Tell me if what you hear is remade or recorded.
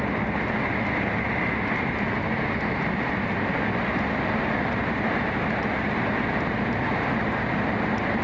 recorded